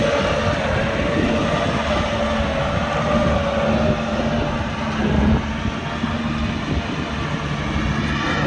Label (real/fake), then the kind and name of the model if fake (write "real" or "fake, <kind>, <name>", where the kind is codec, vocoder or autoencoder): real